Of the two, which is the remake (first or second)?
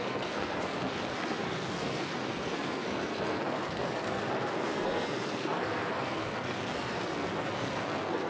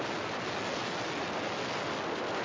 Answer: first